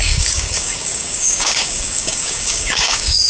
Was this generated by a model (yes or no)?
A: yes